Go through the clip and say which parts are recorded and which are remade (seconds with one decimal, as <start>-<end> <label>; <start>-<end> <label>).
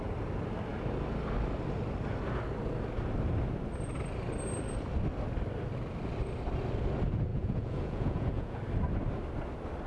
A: 0.0-7.3 recorded; 7.3-8.6 remade; 8.6-9.9 recorded